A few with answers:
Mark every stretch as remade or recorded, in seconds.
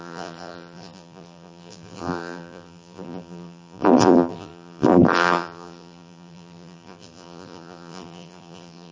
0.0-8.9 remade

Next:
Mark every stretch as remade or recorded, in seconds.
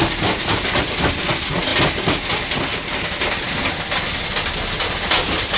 0.0-5.6 recorded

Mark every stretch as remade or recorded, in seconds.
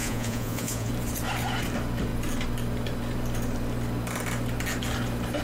0.0-0.9 remade; 0.9-5.4 recorded